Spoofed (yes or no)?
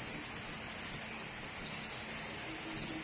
no